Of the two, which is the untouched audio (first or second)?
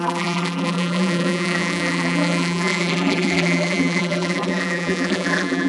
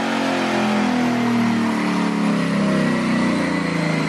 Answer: second